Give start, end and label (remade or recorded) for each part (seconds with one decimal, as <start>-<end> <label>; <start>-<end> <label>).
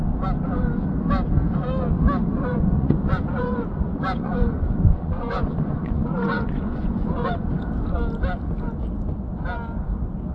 0.0-2.5 recorded; 2.5-7.5 remade; 7.5-10.3 recorded